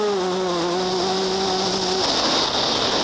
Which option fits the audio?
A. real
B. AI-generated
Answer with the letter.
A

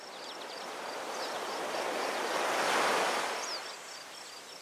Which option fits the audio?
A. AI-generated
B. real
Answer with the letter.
B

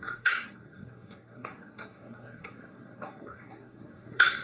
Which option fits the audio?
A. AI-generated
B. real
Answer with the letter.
A